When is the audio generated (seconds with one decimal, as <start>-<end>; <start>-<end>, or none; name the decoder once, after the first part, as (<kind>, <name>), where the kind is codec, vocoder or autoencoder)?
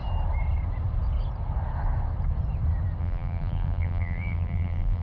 3.0-5.0 (vocoder, BigVGAN v2)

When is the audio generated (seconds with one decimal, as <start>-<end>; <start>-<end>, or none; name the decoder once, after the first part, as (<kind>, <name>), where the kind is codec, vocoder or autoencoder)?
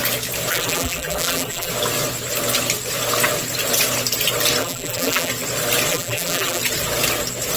0.5-1.7 (vocoder, BigVGAN v2); 4.6-5.3; 5.9-6.6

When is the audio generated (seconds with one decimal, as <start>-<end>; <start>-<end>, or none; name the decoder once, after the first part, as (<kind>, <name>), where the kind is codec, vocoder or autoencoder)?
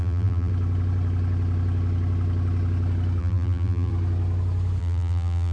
0.0-0.5 (vocoder, BigVGAN v2); 3.2-3.9; 4.8-5.5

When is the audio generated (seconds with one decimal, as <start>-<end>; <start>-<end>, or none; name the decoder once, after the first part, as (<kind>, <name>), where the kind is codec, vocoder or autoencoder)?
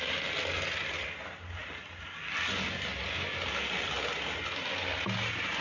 none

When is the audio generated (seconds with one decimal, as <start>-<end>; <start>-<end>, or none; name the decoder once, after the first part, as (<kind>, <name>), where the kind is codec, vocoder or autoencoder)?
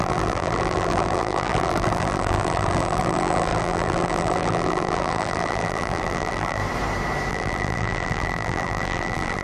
0.0-6.6 (vocoder, BigVGAN v2); 7.3-9.4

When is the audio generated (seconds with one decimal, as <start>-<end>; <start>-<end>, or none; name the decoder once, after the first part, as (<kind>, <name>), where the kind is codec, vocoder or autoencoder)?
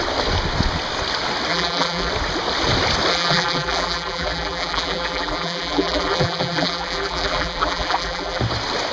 1.5-2.1 (vocoder, BigVGAN v2); 3.1-8.4